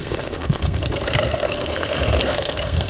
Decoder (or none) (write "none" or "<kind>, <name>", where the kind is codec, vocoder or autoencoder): codec, SNAC